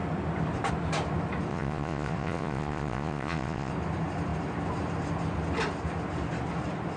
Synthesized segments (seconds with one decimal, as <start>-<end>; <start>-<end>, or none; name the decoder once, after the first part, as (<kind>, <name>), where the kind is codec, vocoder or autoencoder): 1.5-3.7 (vocoder, Vocos)